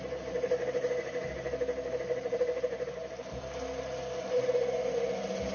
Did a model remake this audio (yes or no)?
no